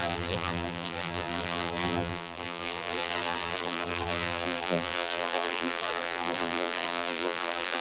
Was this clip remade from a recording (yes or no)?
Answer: yes